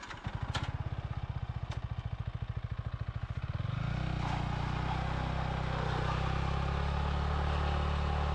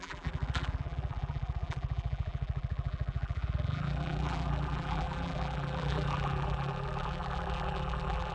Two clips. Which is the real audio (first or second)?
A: first